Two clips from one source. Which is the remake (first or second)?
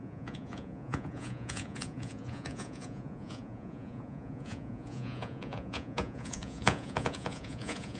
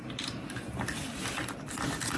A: first